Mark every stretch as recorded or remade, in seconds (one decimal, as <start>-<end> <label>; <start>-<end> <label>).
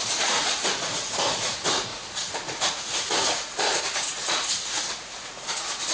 0.0-5.9 remade